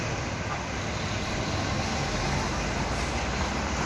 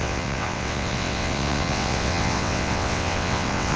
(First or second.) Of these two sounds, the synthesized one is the second